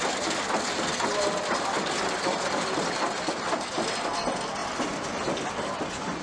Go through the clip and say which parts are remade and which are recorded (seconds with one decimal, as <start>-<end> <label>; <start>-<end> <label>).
0.0-6.2 recorded